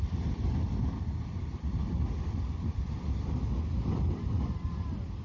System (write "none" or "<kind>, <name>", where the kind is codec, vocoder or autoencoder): none